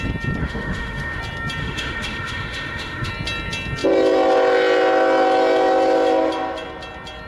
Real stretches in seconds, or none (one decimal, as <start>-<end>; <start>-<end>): 0.0-0.4; 1.2-1.6; 3.1-7.3

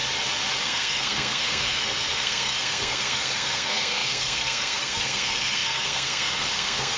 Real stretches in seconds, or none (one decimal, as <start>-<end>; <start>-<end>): 0.0-0.6

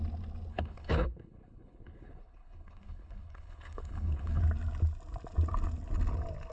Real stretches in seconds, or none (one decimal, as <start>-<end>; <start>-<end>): 0.0-0.5; 4.4-6.5

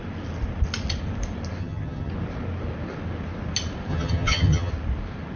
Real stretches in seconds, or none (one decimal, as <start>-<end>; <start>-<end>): 0.0-1.6; 2.1-3.9; 4.7-5.4

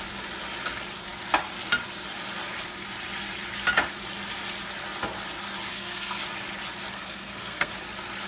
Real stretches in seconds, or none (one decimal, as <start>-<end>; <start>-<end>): 0.0-5.7; 6.2-6.9; 7.7-8.3

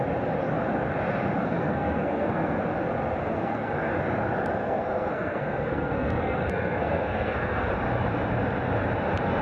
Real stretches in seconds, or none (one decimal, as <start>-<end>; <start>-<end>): 0.0-1.4; 2.6-3.2; 3.9-4.6; 7.7-9.4

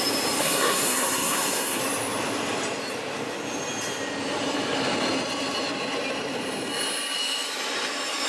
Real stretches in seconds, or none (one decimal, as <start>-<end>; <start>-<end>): 0.0-0.4; 1.8-8.3